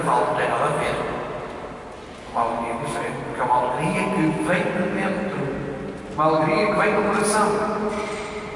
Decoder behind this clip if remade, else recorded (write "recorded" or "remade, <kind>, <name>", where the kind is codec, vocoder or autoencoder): recorded